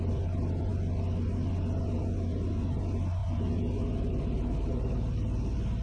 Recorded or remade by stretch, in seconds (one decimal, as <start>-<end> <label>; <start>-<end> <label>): 0.0-5.8 recorded